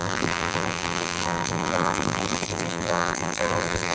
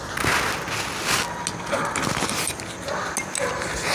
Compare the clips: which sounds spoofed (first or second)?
first